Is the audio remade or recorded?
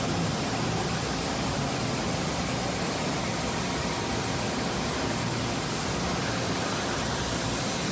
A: remade